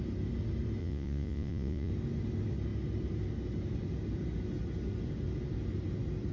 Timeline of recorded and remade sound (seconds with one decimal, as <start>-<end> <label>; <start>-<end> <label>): 0.0-0.8 recorded; 0.8-1.9 remade; 1.9-6.3 recorded